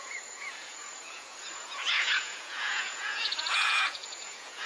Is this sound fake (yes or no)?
yes